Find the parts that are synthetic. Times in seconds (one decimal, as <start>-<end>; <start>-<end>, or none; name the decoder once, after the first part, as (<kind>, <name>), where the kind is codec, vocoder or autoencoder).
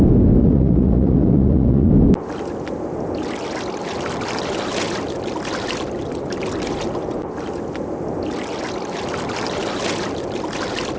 0.4-1.9 (vocoder, Vocos)